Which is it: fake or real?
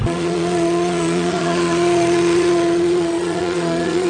fake